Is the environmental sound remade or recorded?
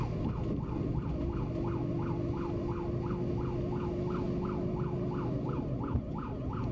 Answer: recorded